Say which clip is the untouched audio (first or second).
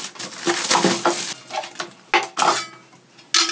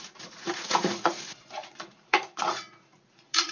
first